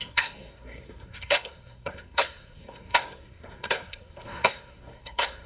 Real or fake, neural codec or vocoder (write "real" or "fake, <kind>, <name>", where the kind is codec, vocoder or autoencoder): fake, codec, SNAC